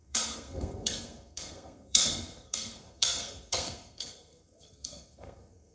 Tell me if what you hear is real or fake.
fake